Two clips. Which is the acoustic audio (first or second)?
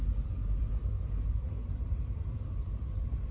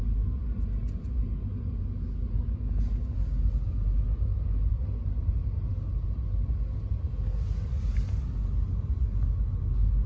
second